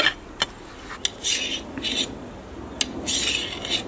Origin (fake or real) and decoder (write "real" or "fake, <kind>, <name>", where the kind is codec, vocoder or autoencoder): real